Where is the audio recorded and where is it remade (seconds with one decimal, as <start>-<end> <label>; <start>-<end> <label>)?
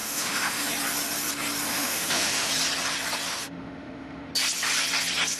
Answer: 0.0-0.7 remade; 0.7-1.7 recorded; 1.7-2.5 remade; 2.5-3.3 recorded; 3.3-4.3 remade; 4.3-5.4 recorded